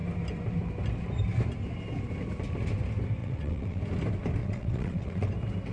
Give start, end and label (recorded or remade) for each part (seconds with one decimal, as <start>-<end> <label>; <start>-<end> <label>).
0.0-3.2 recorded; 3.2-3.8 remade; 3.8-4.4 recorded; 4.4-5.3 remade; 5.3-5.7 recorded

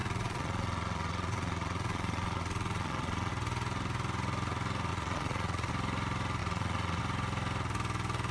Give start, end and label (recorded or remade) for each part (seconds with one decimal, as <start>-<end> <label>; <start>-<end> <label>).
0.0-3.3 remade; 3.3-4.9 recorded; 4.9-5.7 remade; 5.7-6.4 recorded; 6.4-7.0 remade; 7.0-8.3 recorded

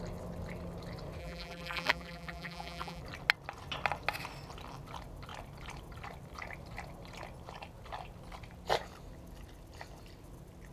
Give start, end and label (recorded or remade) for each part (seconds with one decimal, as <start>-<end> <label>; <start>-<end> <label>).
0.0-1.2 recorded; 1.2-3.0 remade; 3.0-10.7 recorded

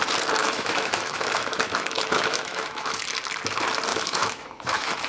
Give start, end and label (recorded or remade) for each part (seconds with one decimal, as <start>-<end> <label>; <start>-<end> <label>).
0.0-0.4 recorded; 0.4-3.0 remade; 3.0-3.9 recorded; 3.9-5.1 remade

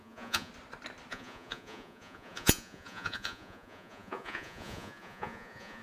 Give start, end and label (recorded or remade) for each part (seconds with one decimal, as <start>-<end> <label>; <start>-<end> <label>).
0.0-0.5 remade; 0.5-1.1 recorded; 1.1-5.8 remade

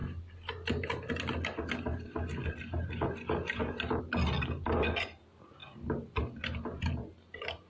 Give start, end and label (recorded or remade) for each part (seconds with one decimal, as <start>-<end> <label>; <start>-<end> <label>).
0.0-7.7 recorded